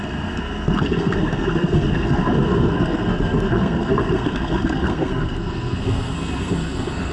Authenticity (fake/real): fake